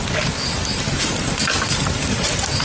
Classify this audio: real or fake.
real